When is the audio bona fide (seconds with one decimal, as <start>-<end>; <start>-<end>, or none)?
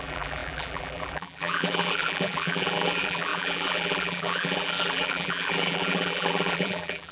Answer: none